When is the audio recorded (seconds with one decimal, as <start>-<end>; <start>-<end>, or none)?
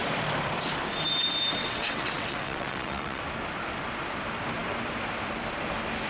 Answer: 0.0-1.6; 3.2-6.1